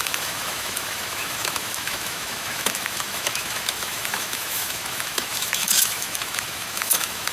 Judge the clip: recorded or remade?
remade